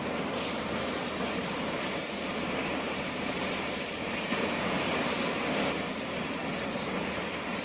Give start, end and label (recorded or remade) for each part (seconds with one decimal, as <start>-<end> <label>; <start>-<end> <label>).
0.0-1.4 recorded; 1.4-5.3 remade; 5.3-7.6 recorded